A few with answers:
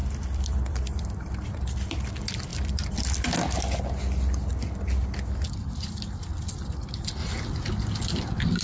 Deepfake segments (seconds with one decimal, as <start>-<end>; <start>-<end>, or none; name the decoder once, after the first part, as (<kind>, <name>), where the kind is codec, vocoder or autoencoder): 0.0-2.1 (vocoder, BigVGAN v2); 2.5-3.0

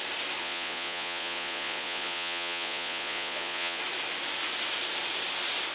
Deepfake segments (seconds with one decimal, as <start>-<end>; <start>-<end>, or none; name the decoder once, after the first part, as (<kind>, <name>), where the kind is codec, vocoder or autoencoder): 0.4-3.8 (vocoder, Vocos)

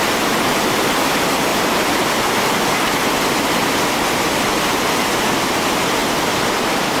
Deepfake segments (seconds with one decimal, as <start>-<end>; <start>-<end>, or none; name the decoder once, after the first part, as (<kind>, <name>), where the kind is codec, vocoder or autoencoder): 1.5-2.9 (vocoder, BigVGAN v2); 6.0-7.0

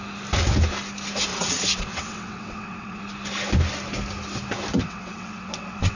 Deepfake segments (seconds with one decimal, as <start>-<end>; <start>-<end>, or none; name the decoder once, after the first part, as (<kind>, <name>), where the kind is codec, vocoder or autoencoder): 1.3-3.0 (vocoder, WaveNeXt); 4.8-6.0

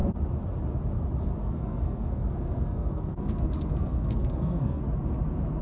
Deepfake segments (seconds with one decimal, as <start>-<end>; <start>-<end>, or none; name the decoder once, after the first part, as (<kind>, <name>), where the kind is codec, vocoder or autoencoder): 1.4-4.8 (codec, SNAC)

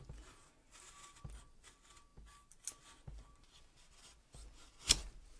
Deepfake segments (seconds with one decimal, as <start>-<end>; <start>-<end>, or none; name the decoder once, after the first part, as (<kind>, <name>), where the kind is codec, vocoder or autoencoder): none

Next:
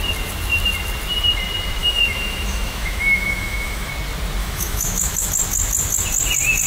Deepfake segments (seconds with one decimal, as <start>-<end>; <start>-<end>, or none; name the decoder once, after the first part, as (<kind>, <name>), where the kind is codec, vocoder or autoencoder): 1.8-3.9 (autoencoder, DAC-VAE); 4.4-5.3